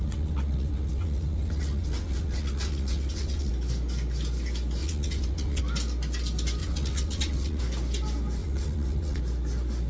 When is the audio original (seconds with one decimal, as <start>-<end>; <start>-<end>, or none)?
3.5-4.8; 5.6-6.6; 7.6-8.4; 9.2-9.9